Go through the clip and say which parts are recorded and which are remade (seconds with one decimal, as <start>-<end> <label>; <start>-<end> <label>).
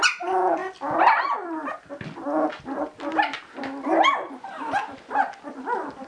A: 0.0-6.1 recorded